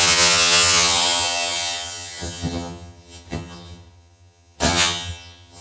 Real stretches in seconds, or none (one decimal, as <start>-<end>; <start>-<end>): none